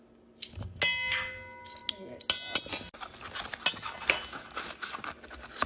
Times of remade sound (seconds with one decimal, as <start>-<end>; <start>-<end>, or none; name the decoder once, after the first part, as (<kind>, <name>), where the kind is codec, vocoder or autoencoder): none